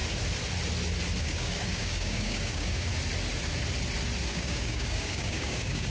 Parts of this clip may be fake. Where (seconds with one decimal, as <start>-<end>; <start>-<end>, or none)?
1.2-2.9; 4.3-5.9